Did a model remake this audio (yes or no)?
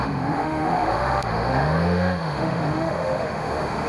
yes